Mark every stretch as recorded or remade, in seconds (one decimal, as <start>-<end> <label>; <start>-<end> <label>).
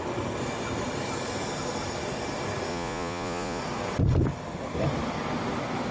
0.0-2.7 recorded; 2.7-3.6 remade; 3.6-5.9 recorded